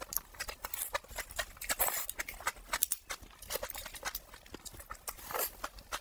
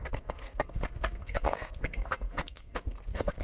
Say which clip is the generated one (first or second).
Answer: second